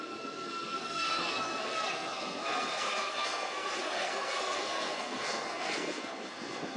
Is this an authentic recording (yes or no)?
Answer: no